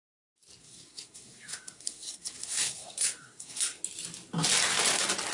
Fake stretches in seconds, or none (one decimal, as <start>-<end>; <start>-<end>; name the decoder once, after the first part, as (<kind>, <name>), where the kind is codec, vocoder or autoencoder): 0.6-3.8 (codec, SNAC)